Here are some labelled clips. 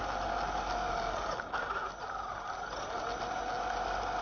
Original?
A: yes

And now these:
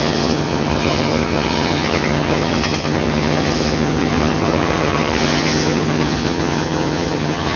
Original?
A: no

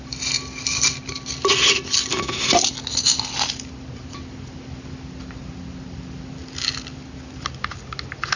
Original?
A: yes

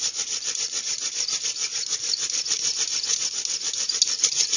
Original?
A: yes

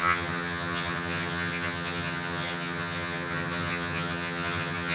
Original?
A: no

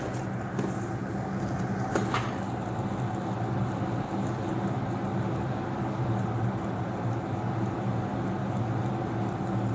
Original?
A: yes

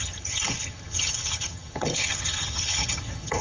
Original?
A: no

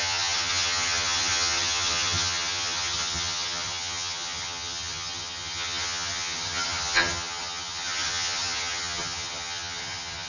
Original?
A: no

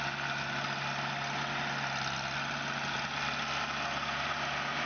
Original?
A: yes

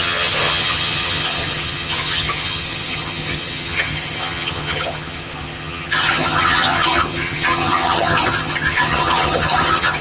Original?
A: no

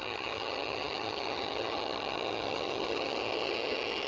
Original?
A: no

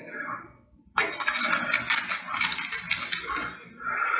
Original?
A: yes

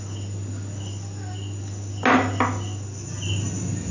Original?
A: yes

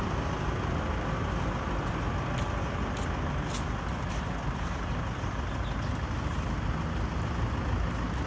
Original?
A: yes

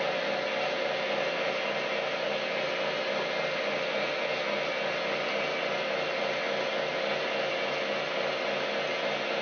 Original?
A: yes